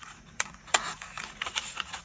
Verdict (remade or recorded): remade